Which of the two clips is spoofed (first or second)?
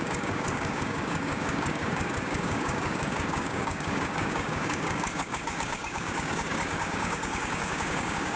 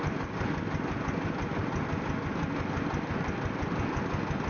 first